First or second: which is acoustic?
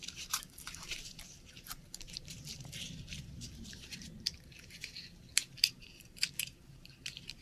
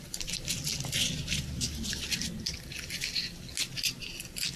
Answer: second